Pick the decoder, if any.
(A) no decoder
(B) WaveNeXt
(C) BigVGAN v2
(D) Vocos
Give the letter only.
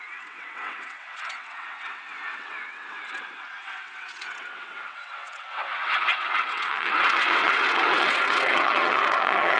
B